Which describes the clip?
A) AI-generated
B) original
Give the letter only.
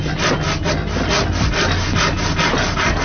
B